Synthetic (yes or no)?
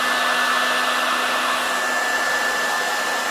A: no